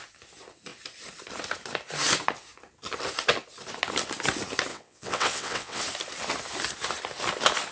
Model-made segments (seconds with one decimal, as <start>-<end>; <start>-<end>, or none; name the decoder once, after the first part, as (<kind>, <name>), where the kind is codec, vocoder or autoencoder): 4.7-5.8 (vocoder, WaveNeXt)